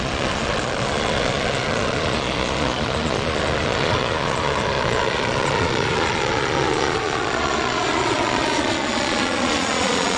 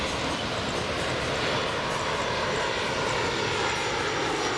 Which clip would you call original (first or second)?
second